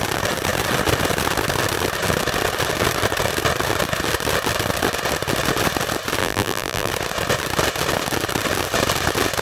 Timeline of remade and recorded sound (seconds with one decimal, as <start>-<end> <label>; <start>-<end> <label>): 0.0-6.2 recorded; 6.2-6.9 remade; 6.9-9.4 recorded